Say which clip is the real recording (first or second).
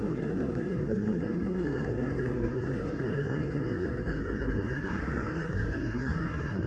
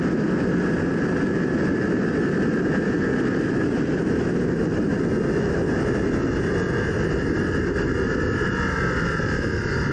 second